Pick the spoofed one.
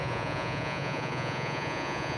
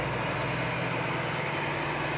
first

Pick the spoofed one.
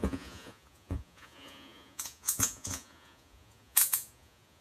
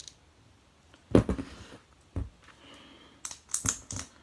first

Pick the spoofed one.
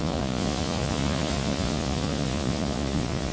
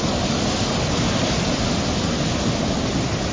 first